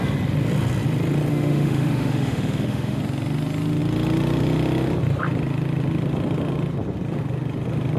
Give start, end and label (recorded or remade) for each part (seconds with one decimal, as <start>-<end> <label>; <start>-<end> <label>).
0.0-1.3 recorded; 1.3-3.0 remade; 3.0-8.0 recorded